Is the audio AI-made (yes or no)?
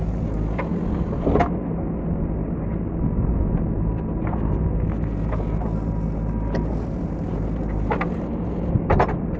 no